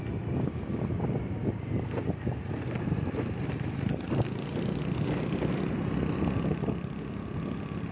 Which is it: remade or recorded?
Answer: recorded